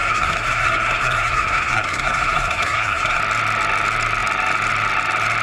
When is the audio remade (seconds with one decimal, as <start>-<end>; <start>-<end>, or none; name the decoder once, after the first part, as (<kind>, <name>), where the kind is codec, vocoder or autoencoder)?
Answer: 0.0-3.2 (codec, SNAC)